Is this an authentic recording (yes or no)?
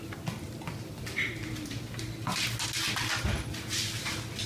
yes